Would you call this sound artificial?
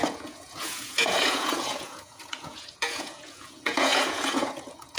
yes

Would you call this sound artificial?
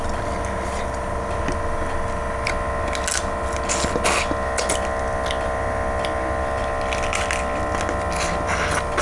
no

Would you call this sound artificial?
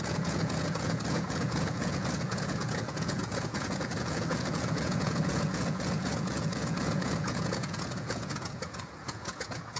yes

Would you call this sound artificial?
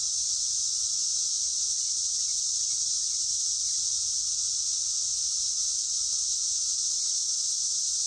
no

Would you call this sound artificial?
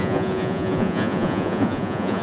yes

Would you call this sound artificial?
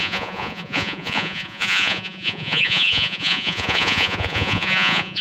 yes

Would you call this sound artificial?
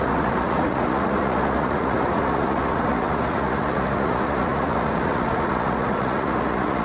yes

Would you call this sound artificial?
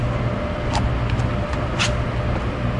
no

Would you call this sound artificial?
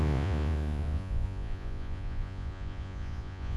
yes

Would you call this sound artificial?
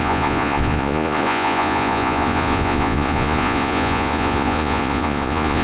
yes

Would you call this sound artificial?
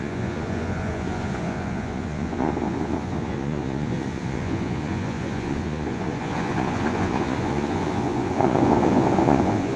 yes